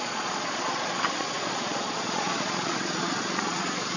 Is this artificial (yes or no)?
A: yes